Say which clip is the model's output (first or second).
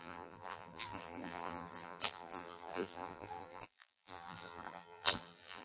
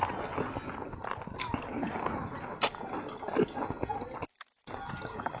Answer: first